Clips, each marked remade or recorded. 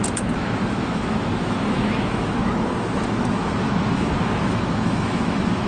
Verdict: remade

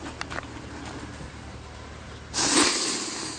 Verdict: recorded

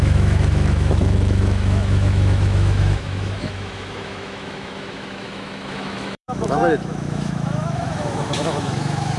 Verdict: remade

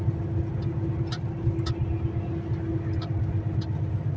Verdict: recorded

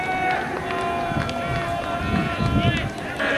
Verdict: recorded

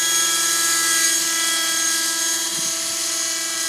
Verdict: recorded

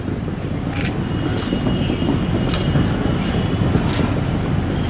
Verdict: recorded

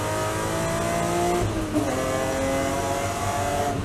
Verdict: recorded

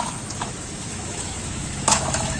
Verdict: remade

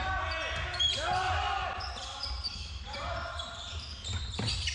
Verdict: recorded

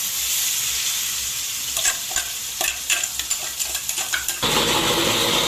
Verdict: recorded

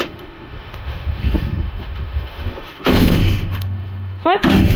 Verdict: remade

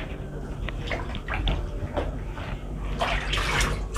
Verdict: recorded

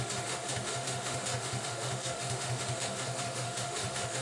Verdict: remade